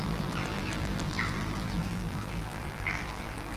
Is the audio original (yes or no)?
no